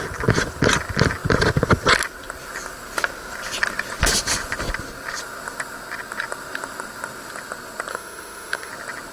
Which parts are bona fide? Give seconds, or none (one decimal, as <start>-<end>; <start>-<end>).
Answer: 0.0-7.9; 8.7-9.1